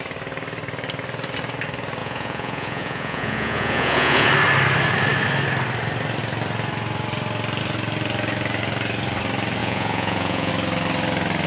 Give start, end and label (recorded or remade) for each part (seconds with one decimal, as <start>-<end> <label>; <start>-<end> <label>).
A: 0.0-2.0 recorded; 2.0-4.3 remade; 4.3-9.6 recorded; 9.6-10.5 remade; 10.5-11.5 recorded